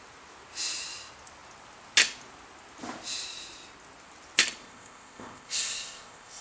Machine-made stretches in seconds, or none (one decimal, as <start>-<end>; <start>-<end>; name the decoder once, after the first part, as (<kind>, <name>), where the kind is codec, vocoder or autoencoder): 4.6-6.4 (codec, ZipCodec)